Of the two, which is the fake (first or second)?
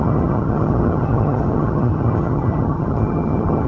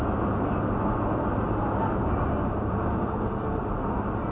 first